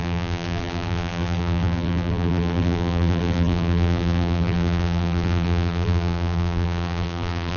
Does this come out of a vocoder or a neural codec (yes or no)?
yes